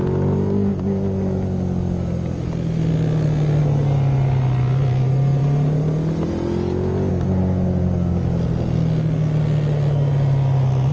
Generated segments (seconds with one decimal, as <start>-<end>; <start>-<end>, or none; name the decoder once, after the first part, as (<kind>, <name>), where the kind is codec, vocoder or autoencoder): none

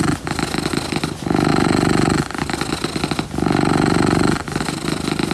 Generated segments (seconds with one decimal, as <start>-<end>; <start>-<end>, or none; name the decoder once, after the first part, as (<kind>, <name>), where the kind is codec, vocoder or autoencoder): none

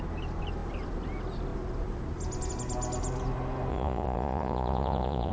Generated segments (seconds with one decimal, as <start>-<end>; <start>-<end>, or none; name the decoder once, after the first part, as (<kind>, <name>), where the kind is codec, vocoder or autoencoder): 3.7-5.3 (vocoder, Vocos)

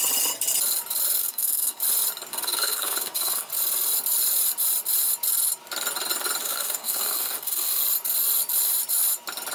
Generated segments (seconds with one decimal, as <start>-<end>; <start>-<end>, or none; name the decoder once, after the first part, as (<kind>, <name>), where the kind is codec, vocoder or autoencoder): 1.2-1.8 (codec, SNAC); 2.3-3.5; 6.4-7.8